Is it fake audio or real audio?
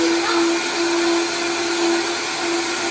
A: real